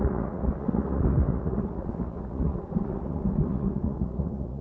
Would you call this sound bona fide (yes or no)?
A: no